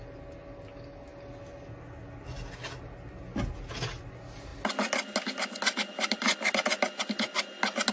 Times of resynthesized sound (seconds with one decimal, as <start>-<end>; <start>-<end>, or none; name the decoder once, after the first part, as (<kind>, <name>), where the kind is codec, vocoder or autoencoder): none